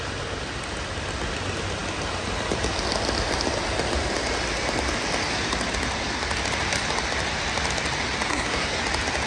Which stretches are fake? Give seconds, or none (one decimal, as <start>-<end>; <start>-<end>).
8.3-8.8